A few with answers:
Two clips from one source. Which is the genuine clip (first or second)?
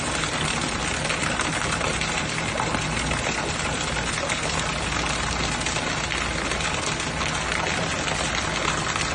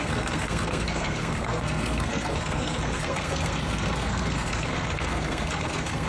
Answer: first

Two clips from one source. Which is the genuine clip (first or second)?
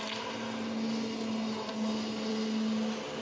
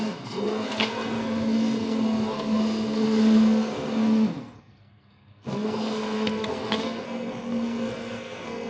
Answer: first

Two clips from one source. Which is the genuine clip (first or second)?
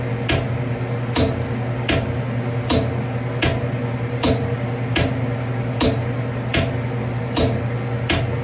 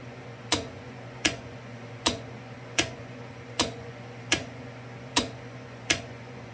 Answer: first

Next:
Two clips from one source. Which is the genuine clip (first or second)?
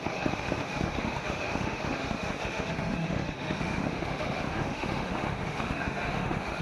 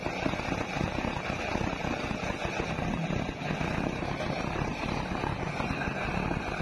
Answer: second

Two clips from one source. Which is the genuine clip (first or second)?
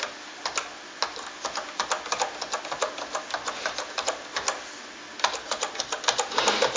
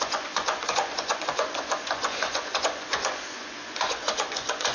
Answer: first